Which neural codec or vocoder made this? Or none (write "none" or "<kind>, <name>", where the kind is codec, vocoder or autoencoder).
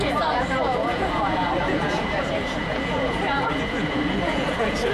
vocoder, Vocos